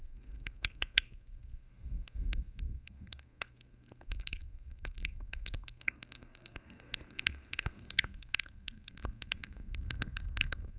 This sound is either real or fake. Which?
fake